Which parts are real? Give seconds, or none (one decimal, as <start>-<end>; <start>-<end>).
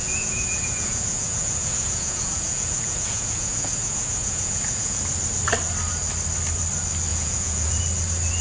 5.0-7.1; 7.8-8.4